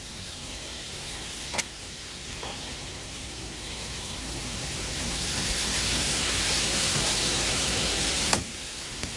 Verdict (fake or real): fake